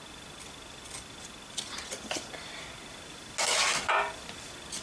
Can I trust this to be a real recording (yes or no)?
yes